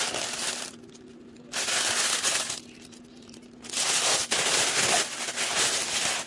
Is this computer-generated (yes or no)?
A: no